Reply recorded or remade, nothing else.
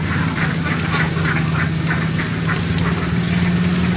recorded